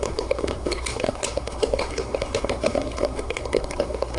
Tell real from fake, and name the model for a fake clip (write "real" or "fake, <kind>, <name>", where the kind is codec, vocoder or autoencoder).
fake, codec, SNAC